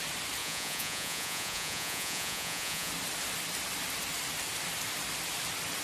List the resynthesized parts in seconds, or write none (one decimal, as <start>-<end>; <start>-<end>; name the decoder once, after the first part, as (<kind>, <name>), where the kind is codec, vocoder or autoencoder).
0.4-2.9 (vocoder, Vocos)